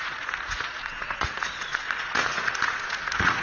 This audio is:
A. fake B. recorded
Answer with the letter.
A